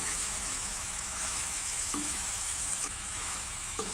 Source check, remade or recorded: remade